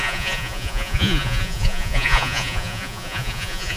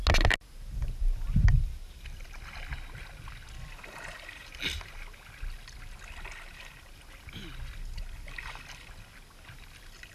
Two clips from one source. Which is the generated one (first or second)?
first